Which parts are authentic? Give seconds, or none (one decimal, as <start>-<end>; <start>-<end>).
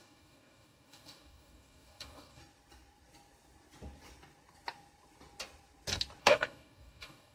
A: 2.4-6.2